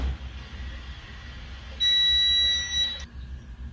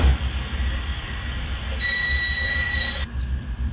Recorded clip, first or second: first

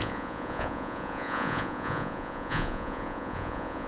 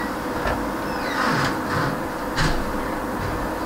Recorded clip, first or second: second